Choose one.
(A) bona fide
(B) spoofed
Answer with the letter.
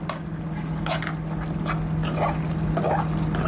A